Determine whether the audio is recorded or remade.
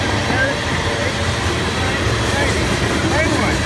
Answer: recorded